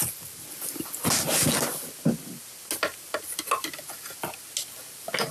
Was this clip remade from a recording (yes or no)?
no